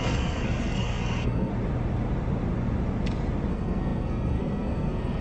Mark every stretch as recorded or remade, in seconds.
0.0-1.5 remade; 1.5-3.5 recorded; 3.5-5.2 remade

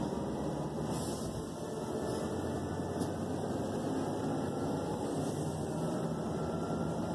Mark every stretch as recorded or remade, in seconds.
0.0-2.6 recorded; 2.6-7.1 remade

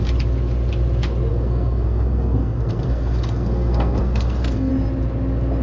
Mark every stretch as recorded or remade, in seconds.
0.0-1.3 recorded; 1.3-4.7 remade; 4.7-5.6 recorded

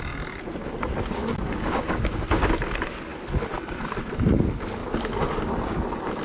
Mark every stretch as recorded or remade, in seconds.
0.0-1.2 recorded; 1.2-2.2 remade; 2.2-4.8 recorded; 4.8-5.5 remade; 5.5-6.2 recorded

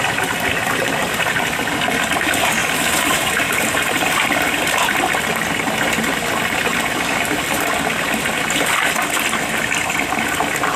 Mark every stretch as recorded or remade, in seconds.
0.0-1.0 recorded; 1.0-1.6 remade; 1.6-2.6 recorded; 2.6-5.0 remade; 5.0-10.8 recorded

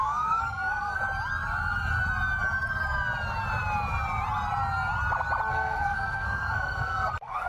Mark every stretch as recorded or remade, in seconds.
0.0-1.0 remade; 1.0-5.5 recorded; 5.5-7.5 remade

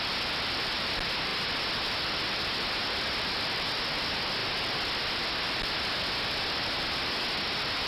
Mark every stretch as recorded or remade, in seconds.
0.0-7.9 recorded